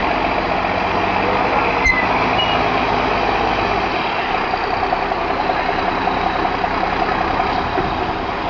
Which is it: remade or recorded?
recorded